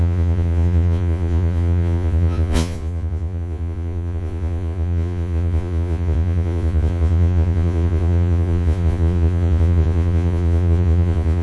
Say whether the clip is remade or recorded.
remade